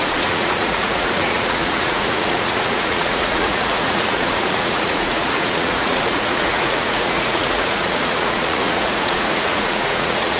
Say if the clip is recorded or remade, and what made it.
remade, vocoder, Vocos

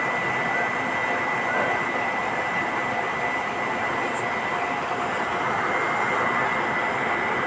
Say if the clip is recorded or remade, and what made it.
recorded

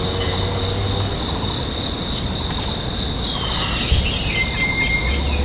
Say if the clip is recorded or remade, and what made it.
recorded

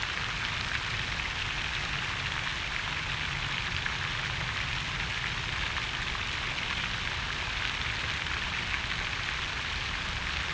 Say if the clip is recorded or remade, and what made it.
recorded